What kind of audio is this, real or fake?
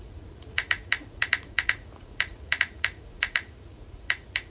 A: fake